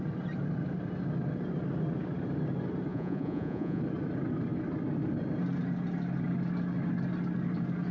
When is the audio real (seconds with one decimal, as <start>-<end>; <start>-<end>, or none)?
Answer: 0.0-2.9; 3.8-7.9